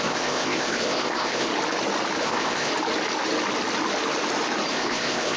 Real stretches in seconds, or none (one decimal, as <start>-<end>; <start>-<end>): 1.5-2.2; 2.7-4.7